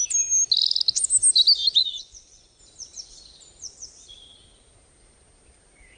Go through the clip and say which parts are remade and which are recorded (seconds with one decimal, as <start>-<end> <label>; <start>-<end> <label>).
0.0-1.8 recorded; 1.8-2.6 remade; 2.6-6.0 recorded